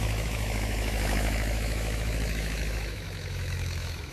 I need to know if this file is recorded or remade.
remade